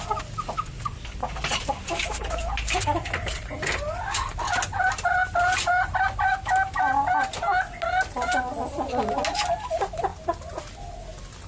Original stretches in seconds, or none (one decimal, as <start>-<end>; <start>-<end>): 0.0-11.5